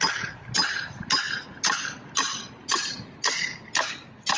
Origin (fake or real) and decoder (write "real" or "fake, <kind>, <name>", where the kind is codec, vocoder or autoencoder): real